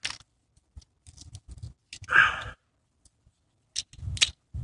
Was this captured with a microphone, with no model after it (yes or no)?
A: yes